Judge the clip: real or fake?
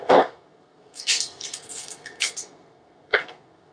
fake